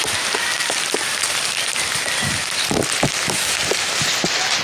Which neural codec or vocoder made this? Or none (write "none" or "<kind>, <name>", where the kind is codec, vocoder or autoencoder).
none